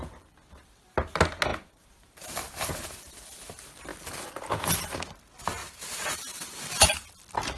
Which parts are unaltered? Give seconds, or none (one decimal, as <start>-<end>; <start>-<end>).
0.0-1.5; 2.7-5.6; 6.6-7.6